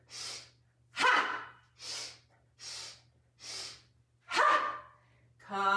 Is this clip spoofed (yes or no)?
no